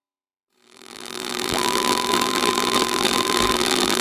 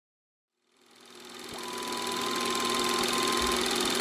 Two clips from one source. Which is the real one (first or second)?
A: second